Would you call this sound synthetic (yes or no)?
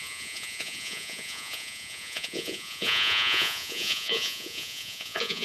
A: yes